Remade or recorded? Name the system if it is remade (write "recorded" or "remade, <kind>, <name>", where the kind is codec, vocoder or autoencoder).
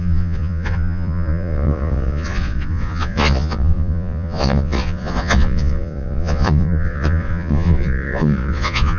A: remade, vocoder, Vocos